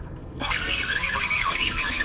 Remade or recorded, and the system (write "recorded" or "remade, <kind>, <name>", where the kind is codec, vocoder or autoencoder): remade, codec, SNAC